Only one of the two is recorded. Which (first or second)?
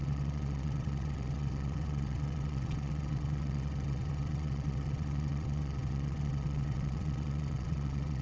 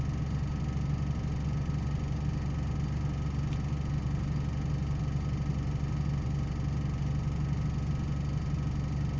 second